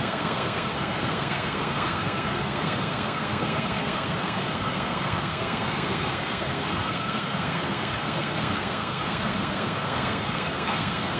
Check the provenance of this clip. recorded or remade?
remade